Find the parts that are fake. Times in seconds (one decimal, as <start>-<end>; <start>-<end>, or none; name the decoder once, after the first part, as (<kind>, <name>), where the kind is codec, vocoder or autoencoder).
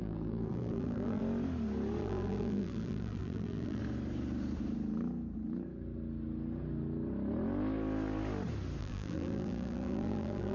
0.0-1.2 (vocoder, BigVGAN v2); 2.0-3.8; 8.8-10.5